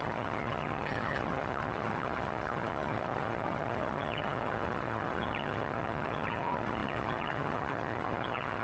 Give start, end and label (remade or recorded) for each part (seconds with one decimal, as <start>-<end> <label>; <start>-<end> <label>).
0.0-8.6 remade